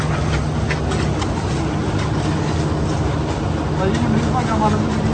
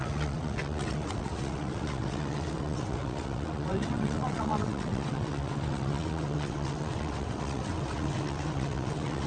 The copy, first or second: second